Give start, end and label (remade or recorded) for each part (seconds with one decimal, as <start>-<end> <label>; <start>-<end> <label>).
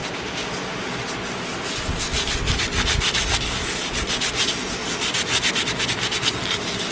0.0-0.5 remade; 0.5-6.9 recorded